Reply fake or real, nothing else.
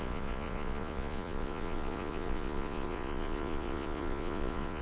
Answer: fake